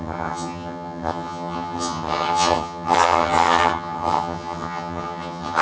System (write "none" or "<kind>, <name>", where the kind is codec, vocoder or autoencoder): vocoder, HiFi-GAN